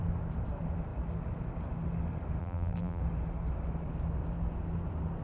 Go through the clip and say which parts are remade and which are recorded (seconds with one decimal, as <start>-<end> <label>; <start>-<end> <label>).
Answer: 0.0-2.4 recorded; 2.4-3.0 remade; 3.0-5.2 recorded